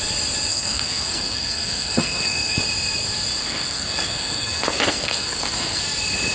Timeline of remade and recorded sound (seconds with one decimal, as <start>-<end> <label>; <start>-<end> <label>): 0.0-0.5 recorded; 0.5-2.6 remade; 2.6-3.4 recorded; 3.4-5.8 remade; 5.8-6.3 recorded